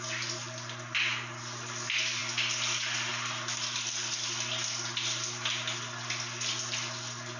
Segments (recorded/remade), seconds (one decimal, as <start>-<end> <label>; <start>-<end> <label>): 0.0-7.4 recorded